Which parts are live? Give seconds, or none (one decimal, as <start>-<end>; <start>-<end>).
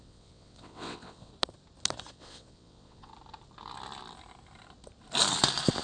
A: 1.3-2.1; 3.1-5.8